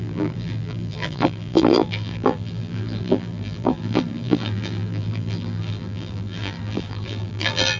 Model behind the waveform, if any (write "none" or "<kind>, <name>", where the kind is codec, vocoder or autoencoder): vocoder, BigVGAN v2